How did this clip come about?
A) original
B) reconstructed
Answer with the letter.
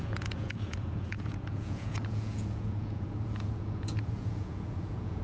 B